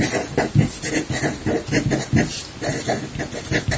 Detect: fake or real real